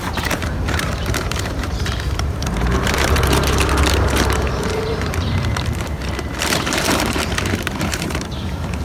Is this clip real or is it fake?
fake